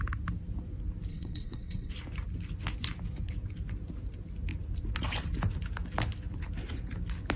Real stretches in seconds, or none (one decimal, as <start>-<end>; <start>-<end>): 0.0-1.1; 1.9-7.4

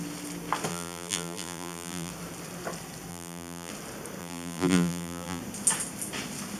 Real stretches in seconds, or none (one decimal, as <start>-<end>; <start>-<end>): 0.0-0.7; 2.1-3.1; 3.7-4.2; 5.4-6.6

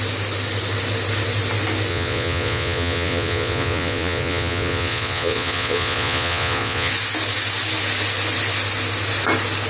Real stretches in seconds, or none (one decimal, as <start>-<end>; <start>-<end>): 0.0-1.9; 6.9-9.7

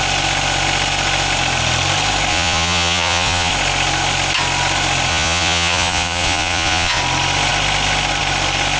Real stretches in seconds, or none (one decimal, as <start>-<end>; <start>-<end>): 0.0-2.3; 3.5-5.1; 7.0-8.8

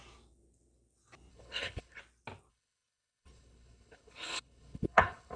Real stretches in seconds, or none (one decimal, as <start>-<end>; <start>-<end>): 0.0-1.3; 2.0-2.5

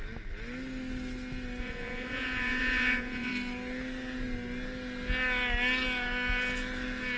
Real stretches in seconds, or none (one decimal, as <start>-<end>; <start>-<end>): 0.0-1.6; 3.3-7.2

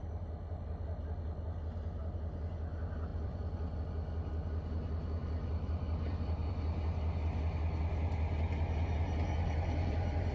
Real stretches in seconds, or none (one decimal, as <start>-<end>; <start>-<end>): 0.0-3.1; 3.8-5.2; 6.5-10.3